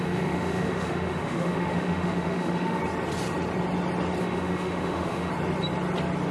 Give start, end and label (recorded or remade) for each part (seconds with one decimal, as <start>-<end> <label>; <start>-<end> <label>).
0.0-2.8 remade; 2.8-4.2 recorded; 4.2-5.3 remade; 5.3-6.3 recorded